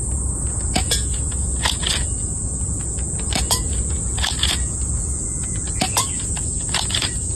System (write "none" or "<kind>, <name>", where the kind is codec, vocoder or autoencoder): vocoder, Vocos